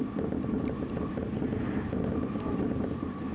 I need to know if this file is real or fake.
real